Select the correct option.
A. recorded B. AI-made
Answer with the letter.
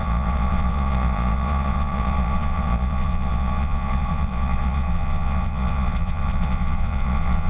B